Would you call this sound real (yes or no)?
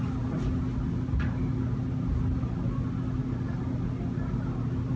yes